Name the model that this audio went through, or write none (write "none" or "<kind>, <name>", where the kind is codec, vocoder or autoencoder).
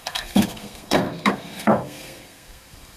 codec, SNAC